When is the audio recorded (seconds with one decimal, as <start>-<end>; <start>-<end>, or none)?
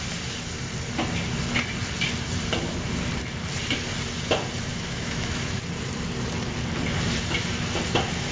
0.0-4.7; 5.6-8.3